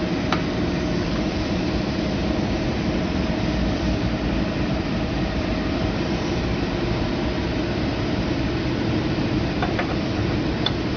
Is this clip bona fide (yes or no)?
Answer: no